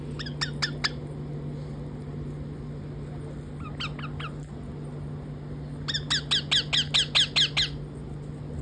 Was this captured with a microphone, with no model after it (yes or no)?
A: yes